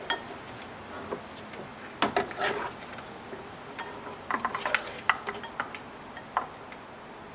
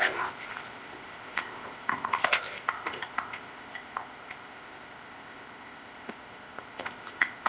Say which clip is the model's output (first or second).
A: second